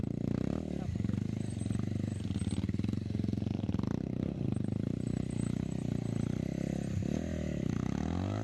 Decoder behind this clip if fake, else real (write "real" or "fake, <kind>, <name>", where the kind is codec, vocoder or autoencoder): real